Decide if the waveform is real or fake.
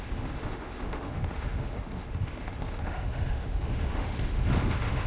fake